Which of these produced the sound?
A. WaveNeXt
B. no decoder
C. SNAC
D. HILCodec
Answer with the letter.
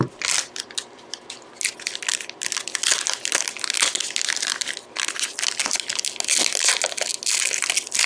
B